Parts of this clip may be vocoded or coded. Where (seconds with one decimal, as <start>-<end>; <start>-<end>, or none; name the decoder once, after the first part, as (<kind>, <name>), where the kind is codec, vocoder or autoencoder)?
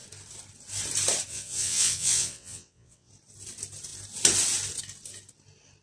1.3-3.1 (vocoder, WaveNeXt)